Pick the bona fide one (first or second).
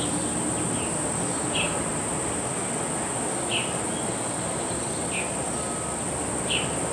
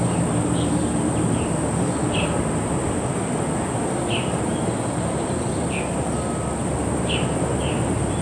first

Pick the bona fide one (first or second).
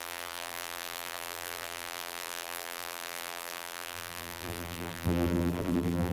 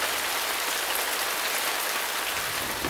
second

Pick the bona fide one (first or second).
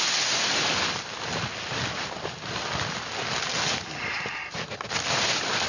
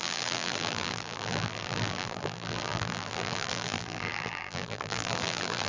first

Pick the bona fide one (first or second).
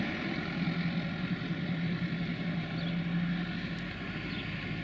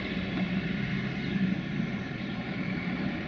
first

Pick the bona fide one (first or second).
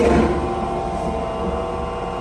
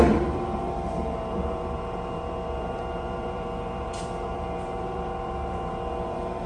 first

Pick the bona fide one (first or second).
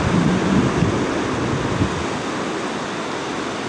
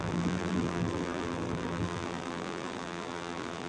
first